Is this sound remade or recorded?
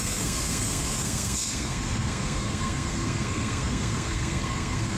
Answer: remade